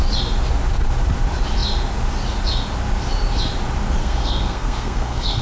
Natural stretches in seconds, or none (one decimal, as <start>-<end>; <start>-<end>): 0.0-4.0